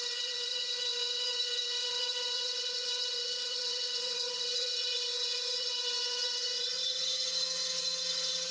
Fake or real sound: fake